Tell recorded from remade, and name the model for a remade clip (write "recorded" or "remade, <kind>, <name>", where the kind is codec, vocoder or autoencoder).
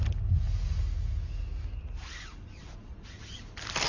recorded